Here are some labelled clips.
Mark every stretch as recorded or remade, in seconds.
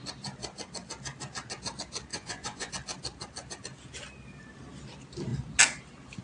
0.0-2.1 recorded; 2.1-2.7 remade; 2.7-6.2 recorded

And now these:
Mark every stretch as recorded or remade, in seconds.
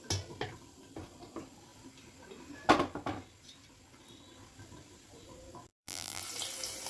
0.0-5.7 recorded; 5.7-6.2 remade; 6.2-6.9 recorded